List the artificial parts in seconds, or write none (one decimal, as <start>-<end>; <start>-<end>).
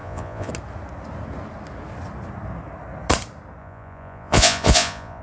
0.0-0.5; 3.6-5.2